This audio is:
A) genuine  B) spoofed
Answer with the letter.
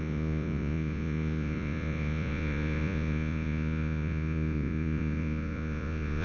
B